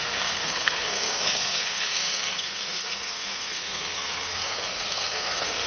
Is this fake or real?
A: fake